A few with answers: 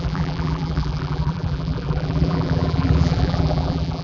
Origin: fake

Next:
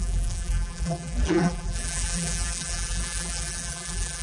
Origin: fake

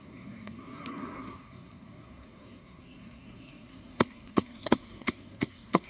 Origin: fake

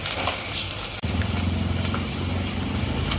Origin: real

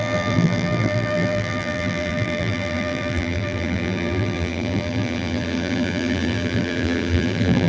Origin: fake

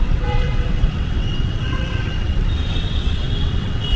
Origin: fake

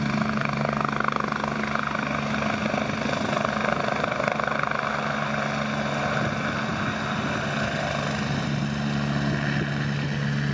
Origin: real